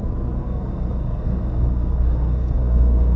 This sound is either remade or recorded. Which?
remade